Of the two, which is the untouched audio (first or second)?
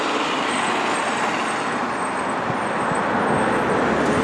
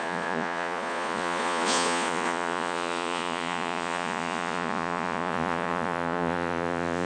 first